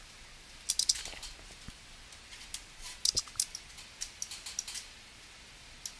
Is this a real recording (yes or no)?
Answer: yes